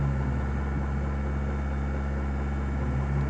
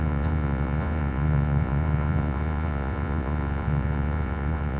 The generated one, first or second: second